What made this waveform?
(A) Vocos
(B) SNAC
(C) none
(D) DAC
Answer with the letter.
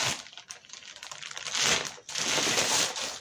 C